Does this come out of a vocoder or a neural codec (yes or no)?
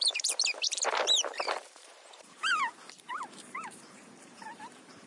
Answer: yes